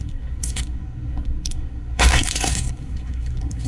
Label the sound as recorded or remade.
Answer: remade